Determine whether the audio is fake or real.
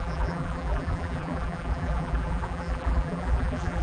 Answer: fake